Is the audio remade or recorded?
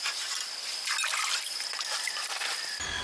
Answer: recorded